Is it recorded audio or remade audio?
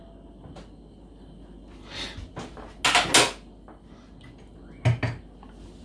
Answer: recorded